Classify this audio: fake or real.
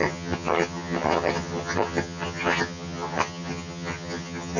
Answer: fake